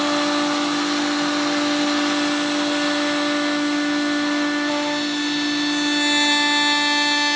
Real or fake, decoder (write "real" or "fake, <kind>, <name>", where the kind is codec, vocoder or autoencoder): real